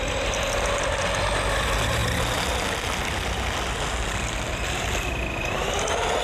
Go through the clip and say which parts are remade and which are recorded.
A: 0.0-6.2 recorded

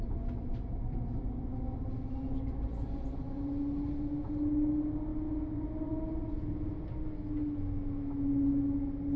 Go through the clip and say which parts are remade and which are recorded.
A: 0.0-9.2 recorded

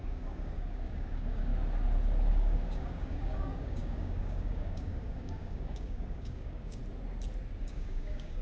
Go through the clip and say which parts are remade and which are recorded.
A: 0.0-1.5 remade; 1.5-2.3 recorded; 2.3-6.8 remade; 6.8-7.6 recorded; 7.6-8.4 remade

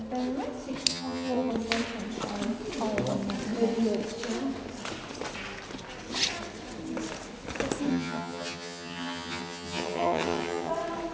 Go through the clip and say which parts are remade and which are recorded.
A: 0.0-0.9 recorded; 0.9-1.5 remade; 1.5-7.9 recorded; 7.9-10.7 remade; 10.7-11.1 recorded

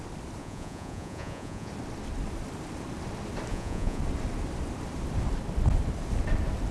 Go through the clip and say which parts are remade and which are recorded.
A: 0.0-0.4 recorded; 0.4-1.7 remade; 1.7-3.5 recorded; 3.5-4.0 remade; 4.0-6.7 recorded

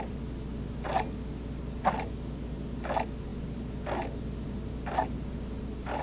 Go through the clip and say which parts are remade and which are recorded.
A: 0.0-6.0 recorded

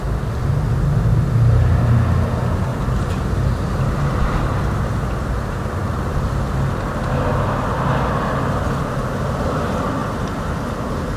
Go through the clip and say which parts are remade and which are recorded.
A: 0.0-2.7 recorded; 2.7-4.6 remade; 4.6-11.2 recorded